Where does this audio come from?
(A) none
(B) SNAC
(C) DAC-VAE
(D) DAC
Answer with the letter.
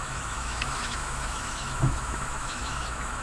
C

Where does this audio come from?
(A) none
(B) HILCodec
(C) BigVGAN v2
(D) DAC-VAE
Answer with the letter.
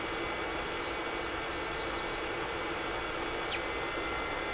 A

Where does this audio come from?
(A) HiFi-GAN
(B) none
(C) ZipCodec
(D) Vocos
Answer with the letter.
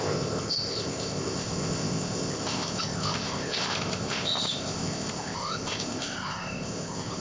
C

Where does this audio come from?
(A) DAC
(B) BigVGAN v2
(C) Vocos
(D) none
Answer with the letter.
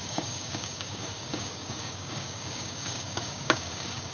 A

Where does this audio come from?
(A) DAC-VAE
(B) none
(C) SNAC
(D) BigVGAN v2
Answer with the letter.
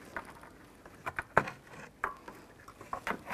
B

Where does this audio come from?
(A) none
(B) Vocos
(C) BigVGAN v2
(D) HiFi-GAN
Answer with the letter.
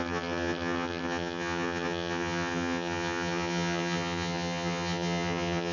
D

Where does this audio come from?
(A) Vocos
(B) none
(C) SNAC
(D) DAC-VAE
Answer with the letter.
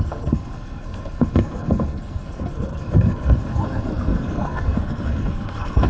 C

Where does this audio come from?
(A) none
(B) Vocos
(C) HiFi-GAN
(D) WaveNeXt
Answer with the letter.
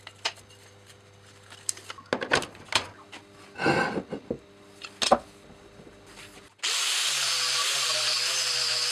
A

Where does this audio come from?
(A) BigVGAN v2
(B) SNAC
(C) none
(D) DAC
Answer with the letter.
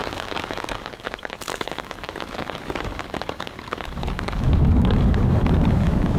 D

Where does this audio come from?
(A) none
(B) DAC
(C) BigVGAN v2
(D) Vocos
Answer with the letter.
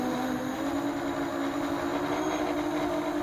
A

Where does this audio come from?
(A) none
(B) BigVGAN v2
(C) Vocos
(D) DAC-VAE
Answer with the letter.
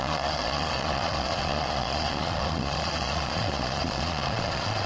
C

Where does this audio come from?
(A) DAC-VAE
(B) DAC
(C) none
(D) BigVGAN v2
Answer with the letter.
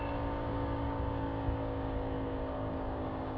B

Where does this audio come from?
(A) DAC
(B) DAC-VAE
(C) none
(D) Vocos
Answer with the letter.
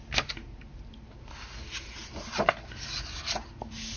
C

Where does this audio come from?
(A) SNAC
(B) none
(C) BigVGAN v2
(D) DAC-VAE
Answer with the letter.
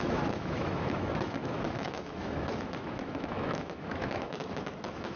D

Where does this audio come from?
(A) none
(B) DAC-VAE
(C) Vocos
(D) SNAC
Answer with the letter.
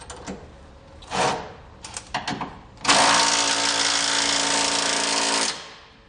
A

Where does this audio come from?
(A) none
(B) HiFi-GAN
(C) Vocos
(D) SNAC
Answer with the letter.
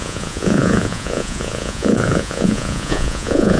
C